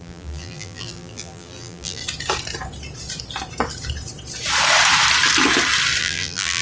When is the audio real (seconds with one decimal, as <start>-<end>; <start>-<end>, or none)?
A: 2.0-6.0